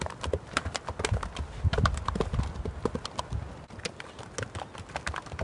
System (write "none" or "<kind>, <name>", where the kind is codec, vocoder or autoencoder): none